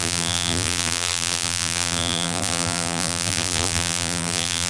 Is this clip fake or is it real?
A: fake